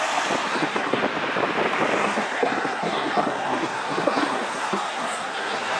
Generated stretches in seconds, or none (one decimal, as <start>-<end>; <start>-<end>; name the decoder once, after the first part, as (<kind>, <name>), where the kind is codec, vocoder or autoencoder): 0.5-1.0 (codec, SNAC); 2.0-5.8